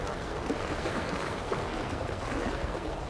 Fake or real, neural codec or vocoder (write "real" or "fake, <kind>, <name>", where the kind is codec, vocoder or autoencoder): fake, codec, SNAC